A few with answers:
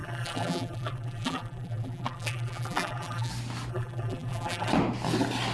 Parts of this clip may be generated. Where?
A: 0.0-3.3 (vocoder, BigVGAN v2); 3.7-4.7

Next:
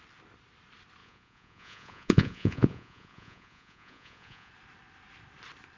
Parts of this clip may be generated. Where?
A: 1.0-4.5 (vocoder, Vocos)

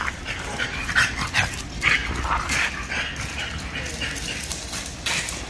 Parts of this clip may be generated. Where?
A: 0.0-2.0 (vocoder, BigVGAN v2)

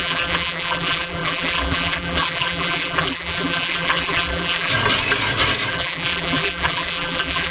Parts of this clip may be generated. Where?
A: 0.0-4.7 (vocoder, BigVGAN v2); 5.7-7.5

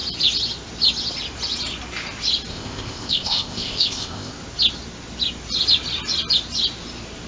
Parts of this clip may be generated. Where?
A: 2.5-4.3 (codec, ZipCodec)